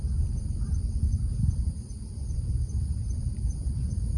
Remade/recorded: remade